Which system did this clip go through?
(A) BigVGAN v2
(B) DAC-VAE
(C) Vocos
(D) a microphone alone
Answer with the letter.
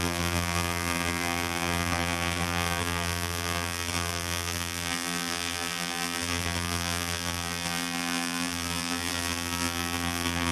A